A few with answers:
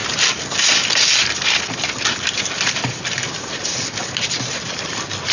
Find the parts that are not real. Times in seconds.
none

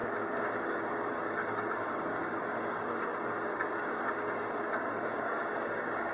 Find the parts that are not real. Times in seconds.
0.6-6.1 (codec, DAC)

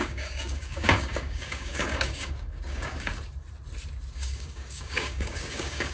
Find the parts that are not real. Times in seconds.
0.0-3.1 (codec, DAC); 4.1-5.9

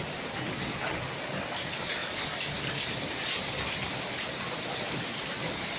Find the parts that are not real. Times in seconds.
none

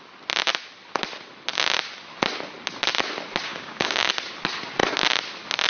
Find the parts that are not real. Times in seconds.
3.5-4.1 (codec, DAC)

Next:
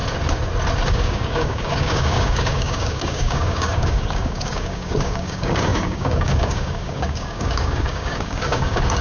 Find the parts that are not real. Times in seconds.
0.9-9.0 (codec, DAC)

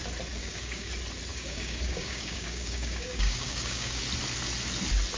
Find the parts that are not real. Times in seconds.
0.4-0.9 (codec, DAC); 1.3-4.0

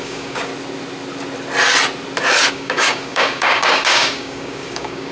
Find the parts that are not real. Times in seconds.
0.0-0.5 (codec, DAC); 2.5-5.1